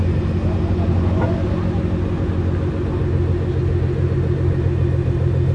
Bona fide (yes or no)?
yes